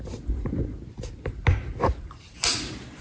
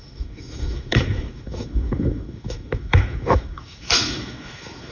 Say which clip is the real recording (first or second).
first